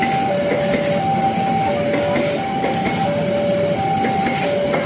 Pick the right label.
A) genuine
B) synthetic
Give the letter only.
A